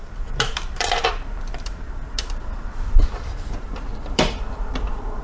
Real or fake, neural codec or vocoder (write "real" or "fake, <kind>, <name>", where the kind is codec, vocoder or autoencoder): fake, vocoder, BigVGAN v2